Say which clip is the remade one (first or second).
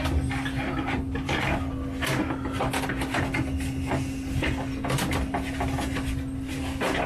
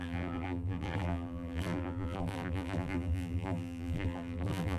second